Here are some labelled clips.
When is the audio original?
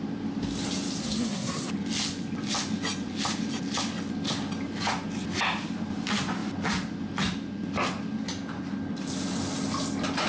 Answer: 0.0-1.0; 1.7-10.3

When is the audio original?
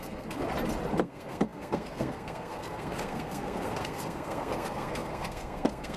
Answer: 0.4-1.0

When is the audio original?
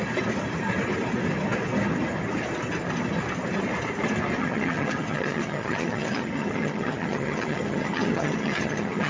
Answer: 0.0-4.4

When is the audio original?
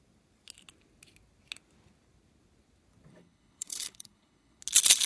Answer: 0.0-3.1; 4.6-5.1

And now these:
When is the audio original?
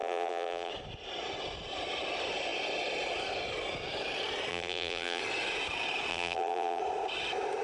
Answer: 0.7-4.5; 5.2-6.1; 6.8-7.6